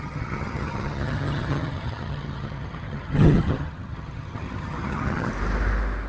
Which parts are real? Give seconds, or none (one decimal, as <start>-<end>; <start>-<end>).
5.3-6.1